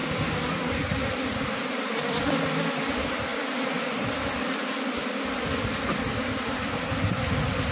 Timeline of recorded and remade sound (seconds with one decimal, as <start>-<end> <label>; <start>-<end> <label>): 0.0-1.0 remade; 1.0-7.7 recorded